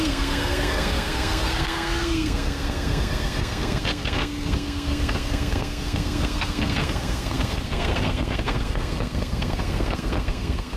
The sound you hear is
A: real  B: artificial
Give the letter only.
B